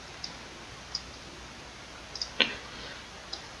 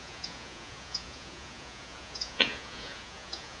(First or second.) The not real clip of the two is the second